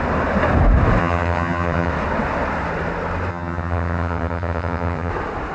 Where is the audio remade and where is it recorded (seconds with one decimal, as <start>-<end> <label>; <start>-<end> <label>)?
0.0-1.0 recorded; 1.0-1.9 remade; 1.9-3.3 recorded; 3.3-5.1 remade; 5.1-5.5 recorded